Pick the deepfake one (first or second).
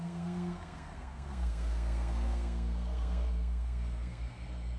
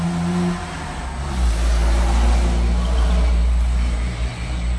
first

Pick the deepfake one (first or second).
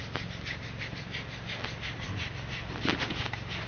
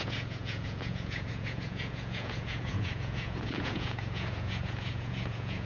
second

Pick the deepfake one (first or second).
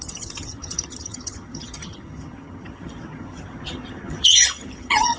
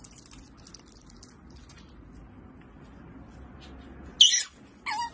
first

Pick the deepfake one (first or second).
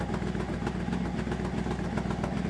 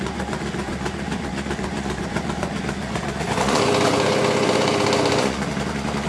second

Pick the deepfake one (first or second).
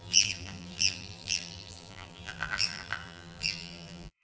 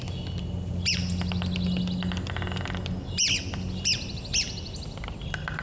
first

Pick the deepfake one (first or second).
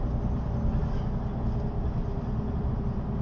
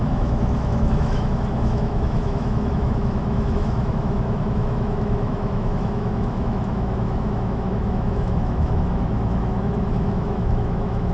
second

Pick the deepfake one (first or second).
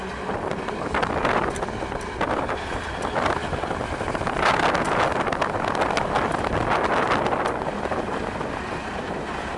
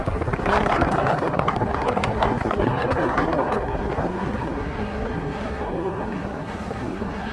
second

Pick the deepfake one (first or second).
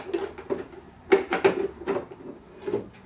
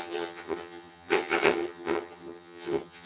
second